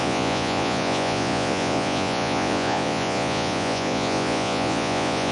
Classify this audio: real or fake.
fake